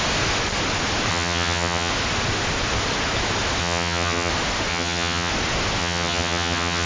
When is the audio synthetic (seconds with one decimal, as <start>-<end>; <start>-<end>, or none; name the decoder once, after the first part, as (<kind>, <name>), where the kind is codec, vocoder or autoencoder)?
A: 1.1-1.9 (vocoder, HiFi-GAN); 3.6-4.3; 4.7-5.3; 5.8-6.9